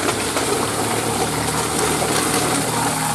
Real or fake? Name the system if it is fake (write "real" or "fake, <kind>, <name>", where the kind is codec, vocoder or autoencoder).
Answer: real